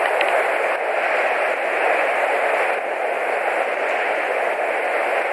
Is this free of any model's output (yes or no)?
yes